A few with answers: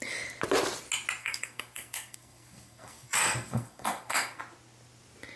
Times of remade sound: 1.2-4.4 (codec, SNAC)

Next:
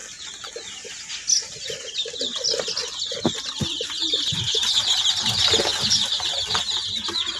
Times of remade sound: none

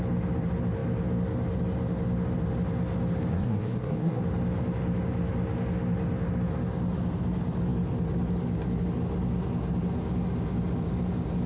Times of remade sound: 3.3-4.2 (codec, SNAC)